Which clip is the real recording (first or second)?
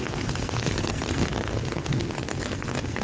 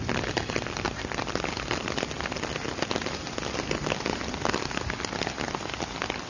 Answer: second